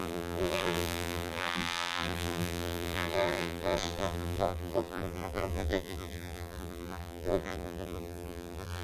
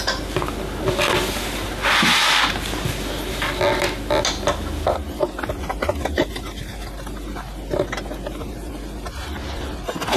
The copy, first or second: first